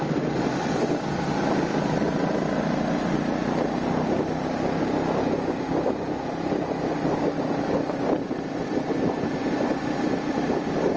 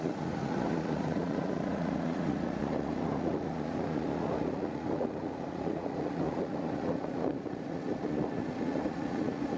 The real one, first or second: first